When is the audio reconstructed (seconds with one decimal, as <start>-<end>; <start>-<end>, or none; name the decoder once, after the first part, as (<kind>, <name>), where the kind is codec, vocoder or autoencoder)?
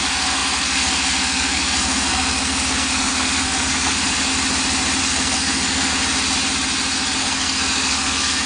0.0-4.3 (codec, SNAC); 5.0-5.9; 7.2-8.5